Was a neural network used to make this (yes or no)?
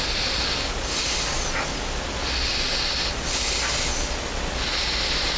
no